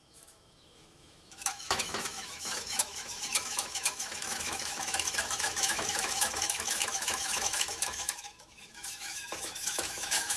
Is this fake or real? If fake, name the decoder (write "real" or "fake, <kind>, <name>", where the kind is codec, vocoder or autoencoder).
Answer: fake, autoencoder, DAC-VAE